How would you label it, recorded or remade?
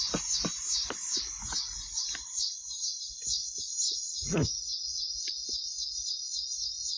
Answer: recorded